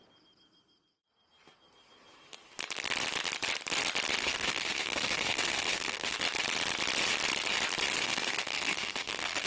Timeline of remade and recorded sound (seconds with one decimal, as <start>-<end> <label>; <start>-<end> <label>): 0.0-4.2 recorded; 4.2-6.2 remade; 6.2-8.0 recorded; 8.0-9.5 remade